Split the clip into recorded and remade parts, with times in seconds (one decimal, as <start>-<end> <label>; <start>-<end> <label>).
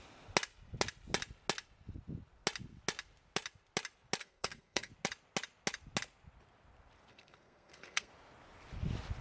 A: 0.0-4.2 recorded; 4.2-4.9 remade; 4.9-7.1 recorded; 7.1-8.1 remade; 8.1-9.2 recorded